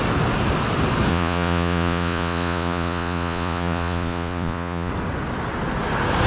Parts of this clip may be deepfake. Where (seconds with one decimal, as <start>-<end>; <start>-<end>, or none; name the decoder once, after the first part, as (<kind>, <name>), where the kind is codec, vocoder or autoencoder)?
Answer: 1.1-4.9 (vocoder, Vocos)